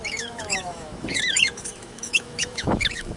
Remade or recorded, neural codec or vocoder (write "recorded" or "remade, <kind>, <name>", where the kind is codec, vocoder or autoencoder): remade, autoencoder, DAC-VAE